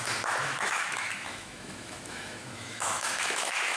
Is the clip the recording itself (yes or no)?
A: no